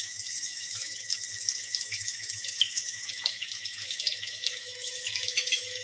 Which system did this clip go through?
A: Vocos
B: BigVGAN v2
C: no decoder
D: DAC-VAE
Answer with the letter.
D